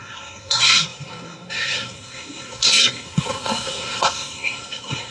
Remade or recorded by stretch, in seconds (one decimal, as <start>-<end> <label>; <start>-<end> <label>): 0.0-5.1 remade